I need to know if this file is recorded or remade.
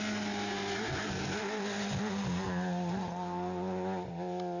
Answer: recorded